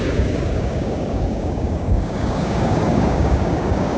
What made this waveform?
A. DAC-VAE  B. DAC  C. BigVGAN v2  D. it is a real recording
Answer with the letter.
B